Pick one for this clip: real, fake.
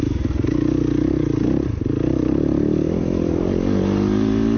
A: real